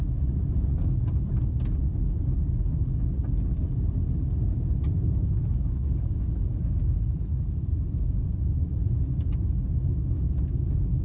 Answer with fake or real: real